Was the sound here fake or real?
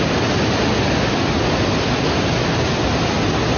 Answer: real